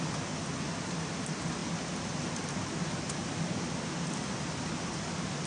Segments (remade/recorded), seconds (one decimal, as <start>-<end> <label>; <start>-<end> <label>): 0.0-5.5 recorded